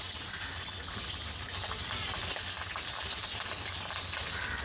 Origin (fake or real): real